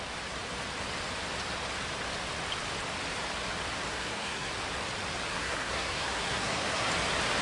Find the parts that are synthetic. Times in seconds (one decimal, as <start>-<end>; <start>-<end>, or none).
3.9-4.5; 5.3-6.9